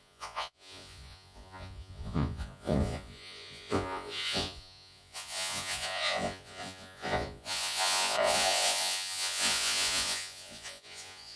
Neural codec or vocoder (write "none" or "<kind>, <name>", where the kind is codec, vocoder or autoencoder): vocoder, Vocos